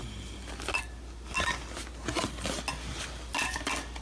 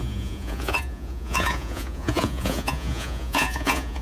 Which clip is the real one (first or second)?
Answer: first